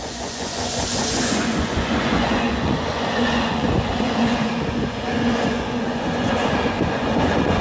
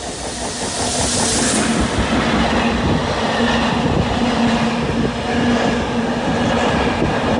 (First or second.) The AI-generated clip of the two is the first